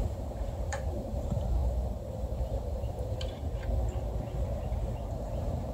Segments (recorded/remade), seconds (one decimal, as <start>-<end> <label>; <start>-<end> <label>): 0.0-1.6 remade; 1.6-2.3 recorded; 2.3-3.4 remade; 3.4-5.1 recorded; 5.1-5.7 remade